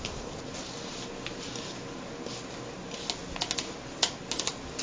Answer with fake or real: real